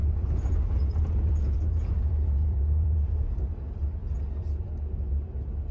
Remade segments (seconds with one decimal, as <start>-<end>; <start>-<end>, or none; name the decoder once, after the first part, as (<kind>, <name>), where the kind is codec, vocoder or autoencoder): 0.0-3.4 (vocoder, Vocos)